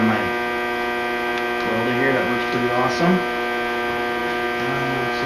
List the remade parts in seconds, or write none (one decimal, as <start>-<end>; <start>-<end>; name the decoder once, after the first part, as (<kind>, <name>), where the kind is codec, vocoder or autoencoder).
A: none